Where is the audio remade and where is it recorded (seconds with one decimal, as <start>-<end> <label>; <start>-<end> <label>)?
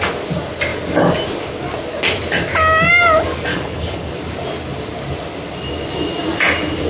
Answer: 0.0-3.5 recorded; 3.5-4.1 remade; 4.1-6.9 recorded